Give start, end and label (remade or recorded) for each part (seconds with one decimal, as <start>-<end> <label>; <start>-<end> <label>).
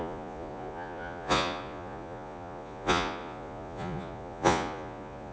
0.0-5.3 remade